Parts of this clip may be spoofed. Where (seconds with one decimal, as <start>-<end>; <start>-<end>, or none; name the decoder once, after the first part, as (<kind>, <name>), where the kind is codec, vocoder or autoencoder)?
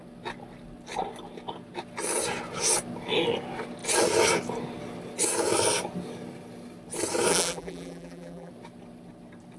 7.3-8.5 (vocoder, BigVGAN v2)